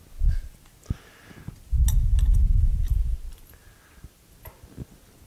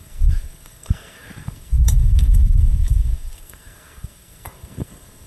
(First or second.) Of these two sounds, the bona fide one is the first